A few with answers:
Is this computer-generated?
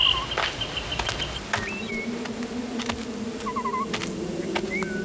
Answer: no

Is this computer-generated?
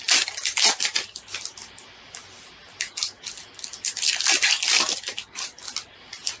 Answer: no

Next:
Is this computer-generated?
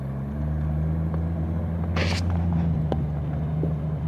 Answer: no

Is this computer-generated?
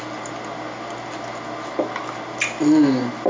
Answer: no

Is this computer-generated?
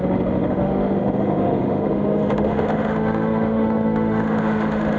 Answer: yes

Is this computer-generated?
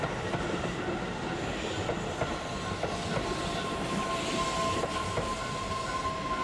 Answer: no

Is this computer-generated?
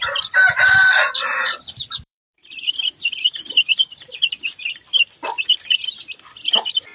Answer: yes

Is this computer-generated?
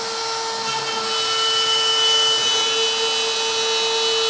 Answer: no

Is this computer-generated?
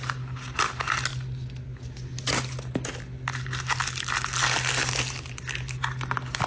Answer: no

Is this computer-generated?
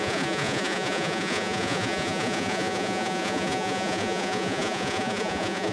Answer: yes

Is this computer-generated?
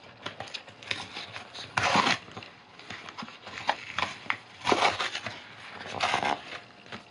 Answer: no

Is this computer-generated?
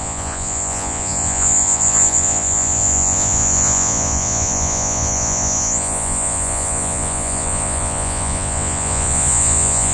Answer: yes